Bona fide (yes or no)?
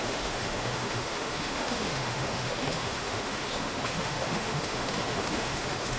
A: no